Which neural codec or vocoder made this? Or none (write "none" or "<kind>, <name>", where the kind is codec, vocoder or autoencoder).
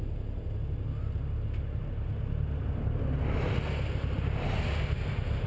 none